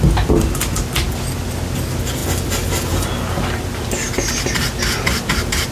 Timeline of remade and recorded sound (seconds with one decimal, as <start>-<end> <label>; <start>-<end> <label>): 0.0-5.7 recorded